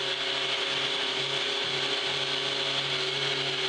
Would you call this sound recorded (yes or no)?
yes